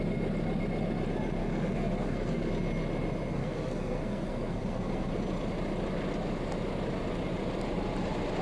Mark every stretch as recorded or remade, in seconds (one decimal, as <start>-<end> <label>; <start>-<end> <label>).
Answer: 0.0-1.4 recorded; 1.4-2.5 remade; 2.5-3.4 recorded; 3.4-5.1 remade; 5.1-8.4 recorded